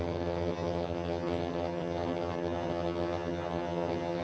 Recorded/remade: remade